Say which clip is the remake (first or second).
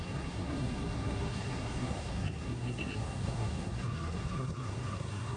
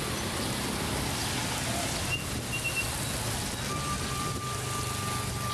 first